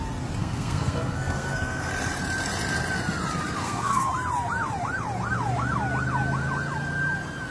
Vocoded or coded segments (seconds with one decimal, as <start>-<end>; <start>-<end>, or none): 0.4-1.9; 3.6-4.1